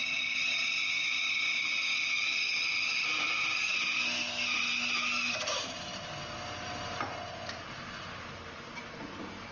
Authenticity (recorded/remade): recorded